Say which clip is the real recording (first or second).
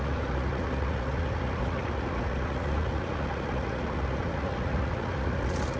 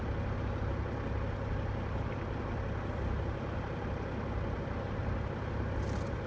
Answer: second